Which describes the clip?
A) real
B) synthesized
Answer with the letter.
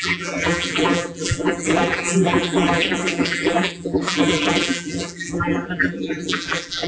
B